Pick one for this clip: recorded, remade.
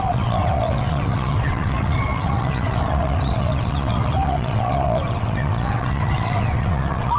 remade